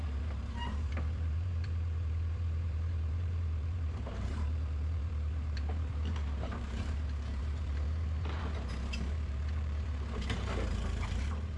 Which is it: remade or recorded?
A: remade